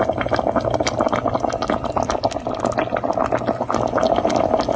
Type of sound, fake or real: real